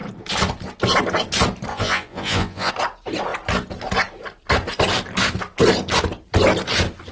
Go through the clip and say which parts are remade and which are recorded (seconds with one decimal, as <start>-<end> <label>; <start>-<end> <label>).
0.0-1.7 recorded; 1.7-2.7 remade; 2.7-7.1 recorded

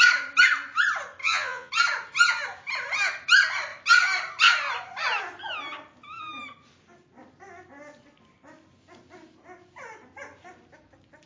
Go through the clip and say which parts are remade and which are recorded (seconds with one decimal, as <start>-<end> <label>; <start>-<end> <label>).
0.0-1.2 recorded; 1.2-1.7 remade; 1.7-11.3 recorded

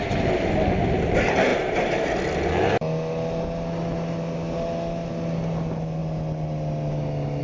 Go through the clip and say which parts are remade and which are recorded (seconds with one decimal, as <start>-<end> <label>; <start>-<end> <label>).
0.0-7.4 recorded